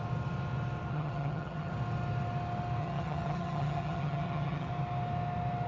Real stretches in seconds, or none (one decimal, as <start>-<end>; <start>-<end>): 0.0-0.9; 1.7-2.8; 4.7-5.7